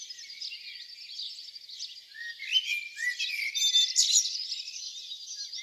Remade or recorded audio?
recorded